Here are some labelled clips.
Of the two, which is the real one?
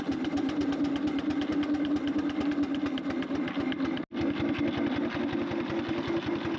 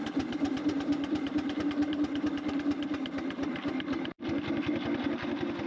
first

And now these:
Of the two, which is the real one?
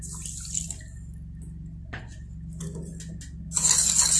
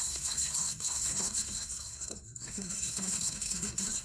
first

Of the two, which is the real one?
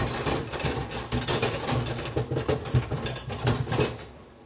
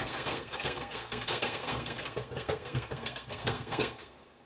first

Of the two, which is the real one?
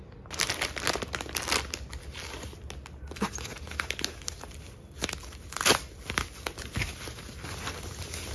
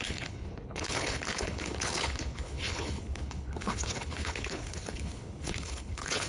first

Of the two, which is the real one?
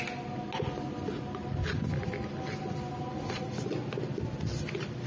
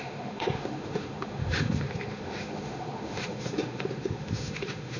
first